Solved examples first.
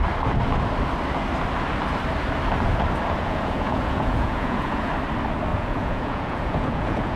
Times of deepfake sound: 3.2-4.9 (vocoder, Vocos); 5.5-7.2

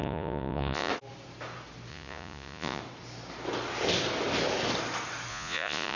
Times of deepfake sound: 0.0-0.9 (vocoder, Vocos); 1.9-2.8; 5.3-6.0

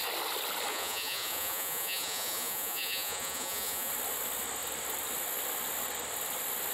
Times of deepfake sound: 0.7-3.9 (vocoder, Vocos)

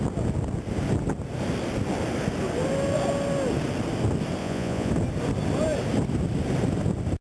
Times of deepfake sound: 4.4-4.9 (vocoder, Vocos)

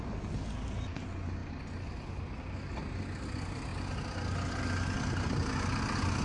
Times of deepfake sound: none

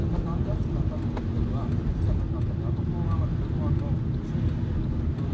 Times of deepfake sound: none

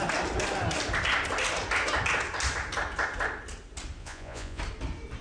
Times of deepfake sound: 4.0-4.6 (vocoder, Vocos)